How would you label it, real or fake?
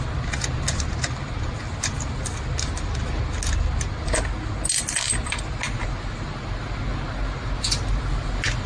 real